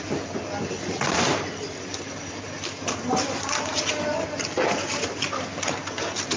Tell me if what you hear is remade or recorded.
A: recorded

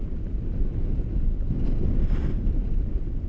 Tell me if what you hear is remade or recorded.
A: recorded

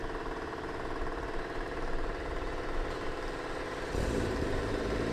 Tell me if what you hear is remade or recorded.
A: remade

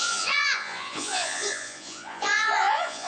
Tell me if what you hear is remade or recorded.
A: remade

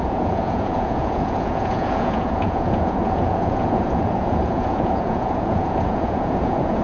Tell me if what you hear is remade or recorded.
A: remade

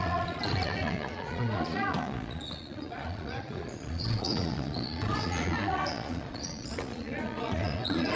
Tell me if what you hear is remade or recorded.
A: remade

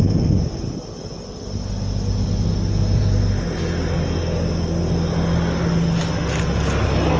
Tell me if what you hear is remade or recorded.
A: recorded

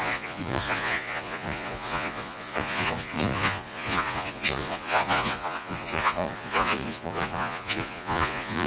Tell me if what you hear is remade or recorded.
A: remade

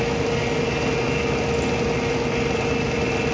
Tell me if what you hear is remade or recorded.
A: recorded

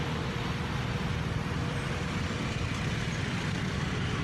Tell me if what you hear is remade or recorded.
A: remade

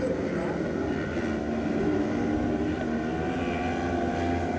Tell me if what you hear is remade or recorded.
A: recorded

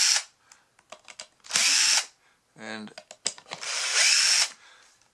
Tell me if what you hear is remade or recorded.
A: recorded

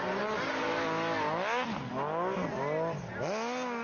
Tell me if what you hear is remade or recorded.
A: recorded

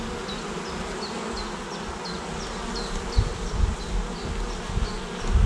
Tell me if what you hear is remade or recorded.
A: recorded